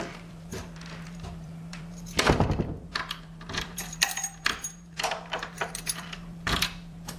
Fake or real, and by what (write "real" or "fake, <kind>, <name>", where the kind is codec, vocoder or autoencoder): fake, vocoder, BigVGAN v2